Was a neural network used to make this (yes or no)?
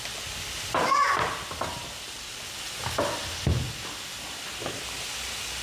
no